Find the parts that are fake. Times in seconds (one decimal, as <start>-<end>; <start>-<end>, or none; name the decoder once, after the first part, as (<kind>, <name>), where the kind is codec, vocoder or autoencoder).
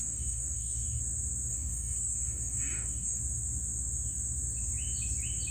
0.0-1.0 (codec, DAC); 1.5-3.2